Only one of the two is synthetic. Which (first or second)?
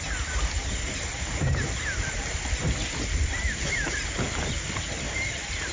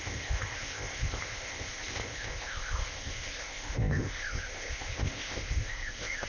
second